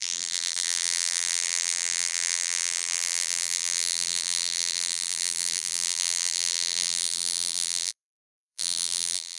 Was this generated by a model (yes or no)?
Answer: yes